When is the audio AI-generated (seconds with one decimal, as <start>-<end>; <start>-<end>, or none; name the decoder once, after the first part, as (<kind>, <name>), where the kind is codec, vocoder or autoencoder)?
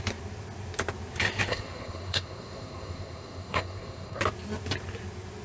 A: 1.5-4.2 (codec, SNAC)